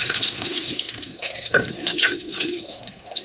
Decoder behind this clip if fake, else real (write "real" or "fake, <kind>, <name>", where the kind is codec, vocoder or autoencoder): fake, codec, SNAC